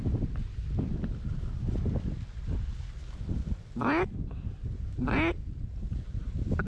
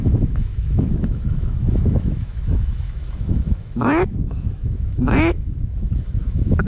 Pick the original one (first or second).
first